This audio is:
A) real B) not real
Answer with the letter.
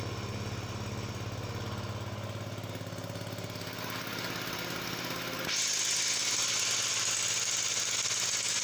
A